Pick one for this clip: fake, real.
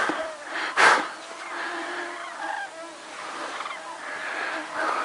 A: real